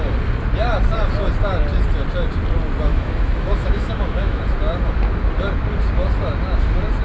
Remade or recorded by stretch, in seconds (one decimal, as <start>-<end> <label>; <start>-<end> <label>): 0.0-2.9 recorded; 2.9-4.4 remade; 4.4-7.0 recorded